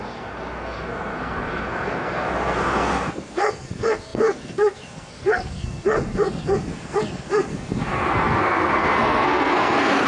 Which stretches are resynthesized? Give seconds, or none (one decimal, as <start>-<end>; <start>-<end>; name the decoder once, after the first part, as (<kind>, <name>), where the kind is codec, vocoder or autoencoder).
0.0-10.1 (codec, SNAC)